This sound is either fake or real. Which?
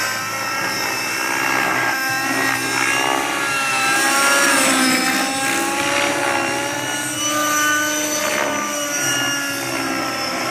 real